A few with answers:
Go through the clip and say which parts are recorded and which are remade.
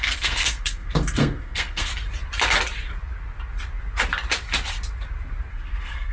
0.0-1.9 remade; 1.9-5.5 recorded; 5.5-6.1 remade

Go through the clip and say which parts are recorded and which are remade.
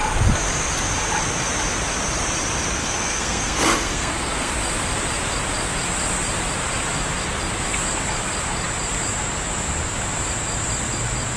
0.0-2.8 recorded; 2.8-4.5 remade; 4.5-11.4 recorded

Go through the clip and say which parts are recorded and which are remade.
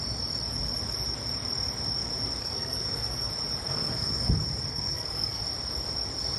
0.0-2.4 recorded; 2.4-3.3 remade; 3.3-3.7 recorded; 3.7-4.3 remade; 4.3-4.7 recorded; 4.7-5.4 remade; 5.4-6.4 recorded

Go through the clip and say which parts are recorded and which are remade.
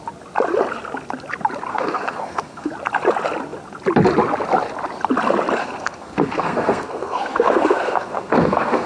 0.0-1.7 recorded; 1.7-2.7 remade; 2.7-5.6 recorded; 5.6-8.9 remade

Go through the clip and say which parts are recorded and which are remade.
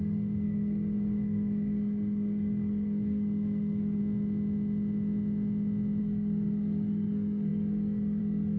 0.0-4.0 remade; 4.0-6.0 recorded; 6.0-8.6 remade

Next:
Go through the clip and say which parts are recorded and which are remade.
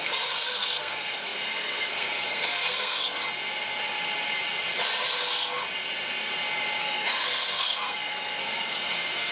0.0-3.2 remade; 3.2-6.8 recorded; 6.8-9.3 remade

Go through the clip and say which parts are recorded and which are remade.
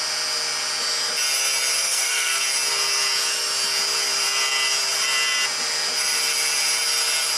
0.0-1.8 recorded; 1.8-2.4 remade; 2.4-7.4 recorded